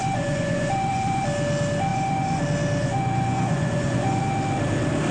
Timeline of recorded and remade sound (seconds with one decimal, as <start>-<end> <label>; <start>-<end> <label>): 0.0-1.2 remade; 1.2-1.9 recorded; 1.9-2.4 remade; 2.4-2.8 recorded; 2.8-4.2 remade; 4.2-5.1 recorded